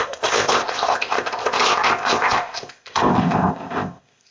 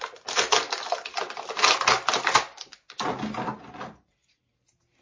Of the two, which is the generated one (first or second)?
first